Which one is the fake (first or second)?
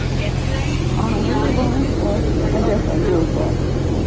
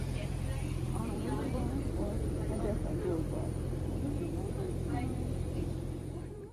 second